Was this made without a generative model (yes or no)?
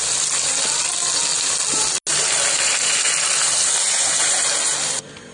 yes